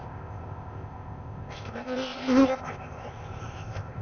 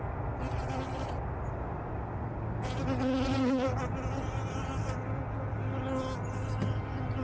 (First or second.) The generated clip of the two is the first